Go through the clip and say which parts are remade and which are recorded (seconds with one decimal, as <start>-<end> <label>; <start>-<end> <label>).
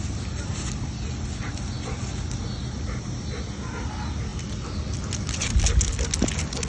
0.0-6.7 recorded